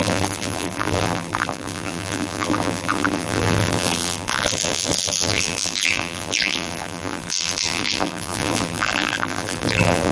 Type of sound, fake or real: fake